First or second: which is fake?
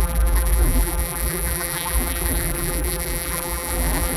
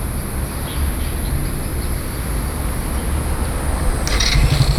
first